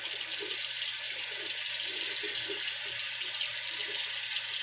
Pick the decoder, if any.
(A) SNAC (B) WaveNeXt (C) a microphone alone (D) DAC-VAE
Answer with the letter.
C